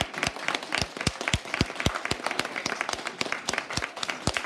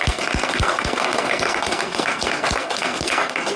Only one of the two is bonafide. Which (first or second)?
first